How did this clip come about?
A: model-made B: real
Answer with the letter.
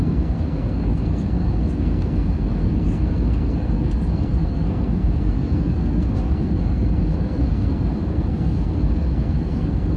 A